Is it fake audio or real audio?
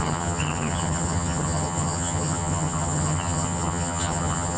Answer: fake